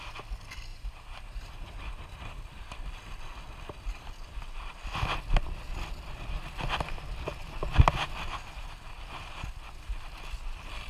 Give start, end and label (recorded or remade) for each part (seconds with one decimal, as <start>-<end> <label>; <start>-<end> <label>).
0.0-0.7 recorded; 0.7-2.4 remade; 2.4-10.9 recorded